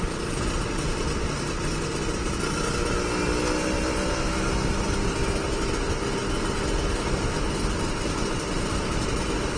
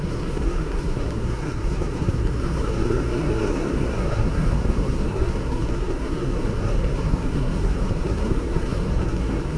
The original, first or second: first